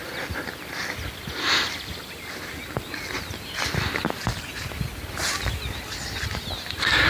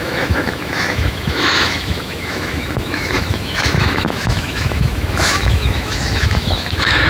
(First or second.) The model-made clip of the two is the second